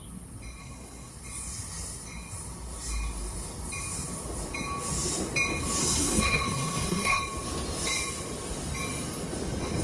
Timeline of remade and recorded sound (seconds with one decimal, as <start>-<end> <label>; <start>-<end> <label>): 0.0-0.6 recorded; 0.6-1.1 remade; 1.1-5.8 recorded; 5.8-7.2 remade; 7.2-9.8 recorded